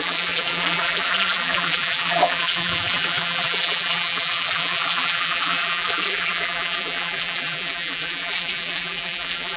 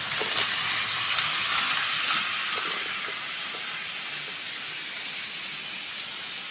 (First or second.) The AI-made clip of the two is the first